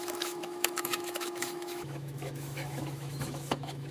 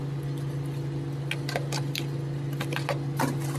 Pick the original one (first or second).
second